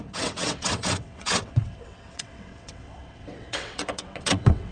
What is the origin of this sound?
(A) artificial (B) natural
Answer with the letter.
A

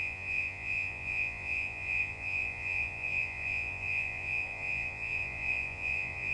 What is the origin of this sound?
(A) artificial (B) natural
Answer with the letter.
A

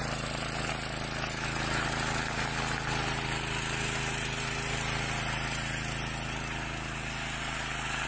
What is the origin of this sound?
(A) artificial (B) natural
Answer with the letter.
B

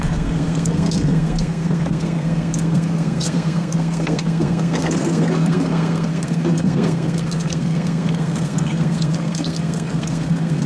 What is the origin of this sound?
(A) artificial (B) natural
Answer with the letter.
A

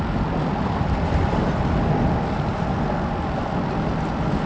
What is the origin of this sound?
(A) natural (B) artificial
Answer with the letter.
A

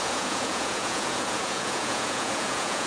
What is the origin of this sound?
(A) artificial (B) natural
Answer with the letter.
A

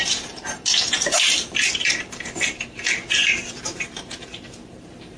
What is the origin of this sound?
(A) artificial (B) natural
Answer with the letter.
A